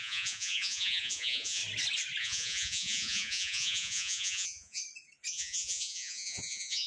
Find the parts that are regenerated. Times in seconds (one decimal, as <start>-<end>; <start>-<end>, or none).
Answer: 0.0-1.6; 2.2-4.8; 5.3-6.9